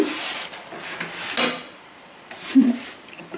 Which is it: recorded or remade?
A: recorded